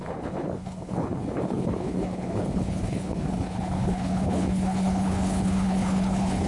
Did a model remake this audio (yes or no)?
yes